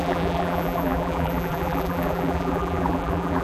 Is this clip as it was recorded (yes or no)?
no